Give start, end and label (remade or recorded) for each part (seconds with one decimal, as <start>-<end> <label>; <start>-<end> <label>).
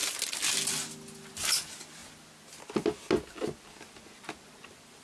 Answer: 0.0-5.0 recorded